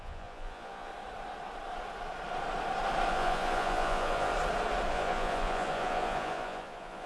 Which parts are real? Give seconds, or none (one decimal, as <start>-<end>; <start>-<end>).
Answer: 0.9-3.1; 4.3-4.9